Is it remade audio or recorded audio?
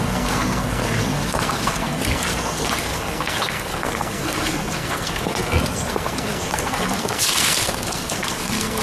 remade